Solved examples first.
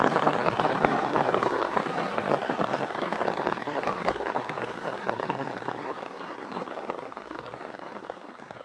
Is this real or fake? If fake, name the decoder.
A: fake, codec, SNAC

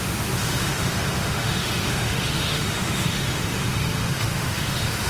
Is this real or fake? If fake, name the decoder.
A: fake, autoencoder, DAC-VAE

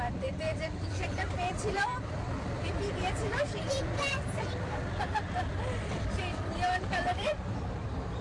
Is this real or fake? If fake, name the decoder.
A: fake, vocoder, BigVGAN v2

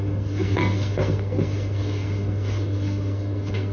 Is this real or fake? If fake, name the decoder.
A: fake, codec, SNAC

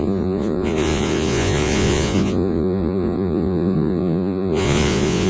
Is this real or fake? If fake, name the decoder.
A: fake, vocoder, Vocos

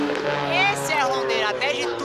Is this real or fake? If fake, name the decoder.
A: real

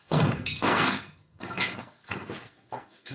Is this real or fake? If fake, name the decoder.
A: fake, codec, SNAC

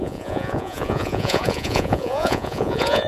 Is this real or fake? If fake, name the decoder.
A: fake, vocoder, Vocos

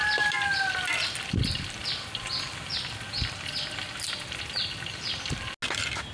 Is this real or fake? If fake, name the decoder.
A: real